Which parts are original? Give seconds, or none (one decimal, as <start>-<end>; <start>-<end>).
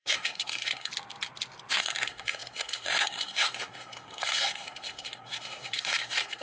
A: 0.9-1.7